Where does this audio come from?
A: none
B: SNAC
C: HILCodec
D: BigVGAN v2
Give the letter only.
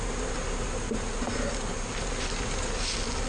A